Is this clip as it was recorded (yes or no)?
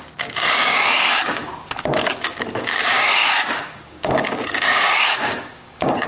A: no